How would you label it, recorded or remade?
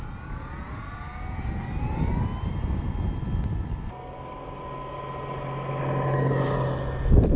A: recorded